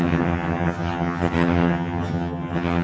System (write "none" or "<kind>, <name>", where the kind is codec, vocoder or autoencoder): vocoder, HiFi-GAN